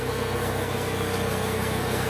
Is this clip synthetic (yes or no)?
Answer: yes